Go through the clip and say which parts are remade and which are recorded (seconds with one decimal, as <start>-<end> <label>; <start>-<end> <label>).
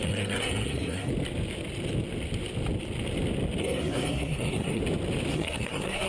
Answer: 0.0-1.1 remade; 1.1-3.6 recorded; 3.6-4.8 remade; 4.8-5.3 recorded; 5.3-6.1 remade